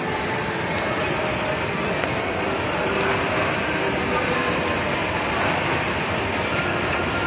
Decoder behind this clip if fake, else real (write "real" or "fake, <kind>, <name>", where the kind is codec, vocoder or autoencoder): real